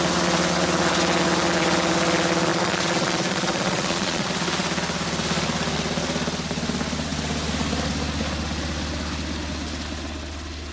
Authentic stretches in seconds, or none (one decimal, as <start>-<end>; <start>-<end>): 0.0-2.5; 4.3-10.7

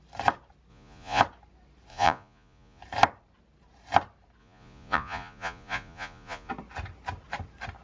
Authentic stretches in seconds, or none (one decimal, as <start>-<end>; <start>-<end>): 0.0-0.7; 1.2-1.9; 2.8-4.4; 6.5-7.8

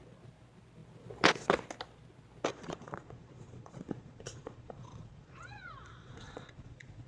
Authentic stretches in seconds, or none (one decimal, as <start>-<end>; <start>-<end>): 0.0-2.5

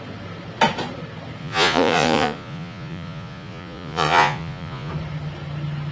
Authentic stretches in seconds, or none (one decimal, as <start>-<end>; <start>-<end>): 0.0-1.4; 4.9-5.9

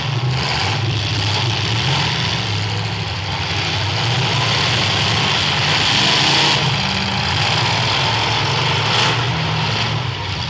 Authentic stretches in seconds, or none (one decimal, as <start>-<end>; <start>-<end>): 0.0-10.5

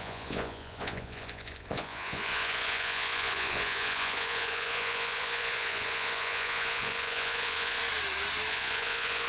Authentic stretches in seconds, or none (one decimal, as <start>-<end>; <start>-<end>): 7.8-8.5

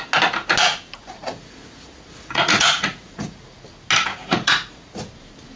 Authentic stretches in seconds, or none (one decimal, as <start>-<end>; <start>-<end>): 0.0-1.0; 3.6-4.1; 5.0-5.6

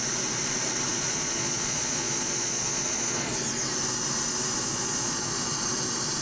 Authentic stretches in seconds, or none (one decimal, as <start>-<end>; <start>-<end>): 0.0-0.9; 3.3-4.6; 5.5-6.2